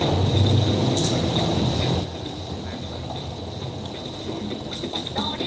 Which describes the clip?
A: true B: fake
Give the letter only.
A